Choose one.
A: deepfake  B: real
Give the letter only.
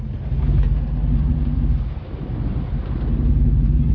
B